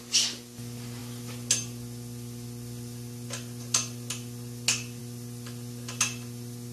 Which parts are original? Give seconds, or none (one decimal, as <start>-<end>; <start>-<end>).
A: 0.0-6.7